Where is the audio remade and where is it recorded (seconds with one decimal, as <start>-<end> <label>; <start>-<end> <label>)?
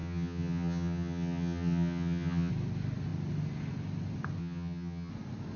0.0-2.5 remade; 2.5-4.4 recorded; 4.4-5.1 remade; 5.1-5.6 recorded